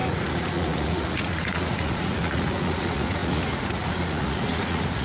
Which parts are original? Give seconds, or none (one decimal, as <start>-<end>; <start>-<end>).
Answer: none